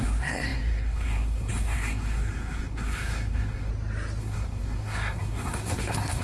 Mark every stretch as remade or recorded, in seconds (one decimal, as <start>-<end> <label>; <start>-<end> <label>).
0.0-3.7 remade; 3.7-4.2 recorded; 4.2-6.2 remade